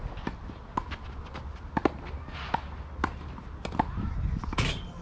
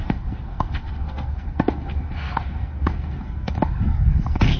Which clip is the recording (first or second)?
first